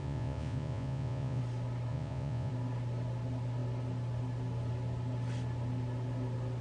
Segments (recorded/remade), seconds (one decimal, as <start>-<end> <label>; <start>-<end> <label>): 0.0-1.4 remade; 1.4-1.9 recorded; 1.9-2.5 remade; 2.5-6.6 recorded